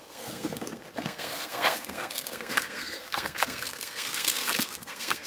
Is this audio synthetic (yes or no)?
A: yes